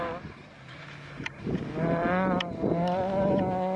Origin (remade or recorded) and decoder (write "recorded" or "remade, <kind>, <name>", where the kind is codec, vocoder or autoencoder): recorded